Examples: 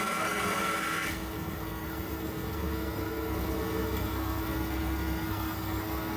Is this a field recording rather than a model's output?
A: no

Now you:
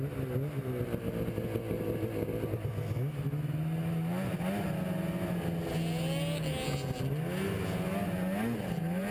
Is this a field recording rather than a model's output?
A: yes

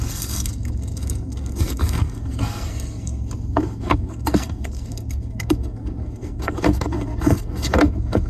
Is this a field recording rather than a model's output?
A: no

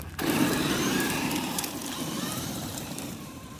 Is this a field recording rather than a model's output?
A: no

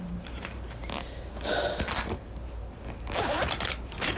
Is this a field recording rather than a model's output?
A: no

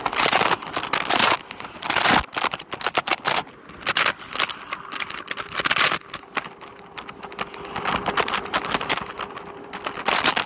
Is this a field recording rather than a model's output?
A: yes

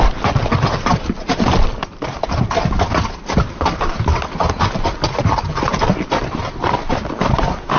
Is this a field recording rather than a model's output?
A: yes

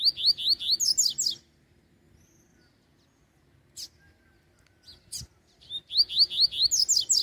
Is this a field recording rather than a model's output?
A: yes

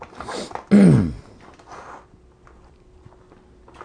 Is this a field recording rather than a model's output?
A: yes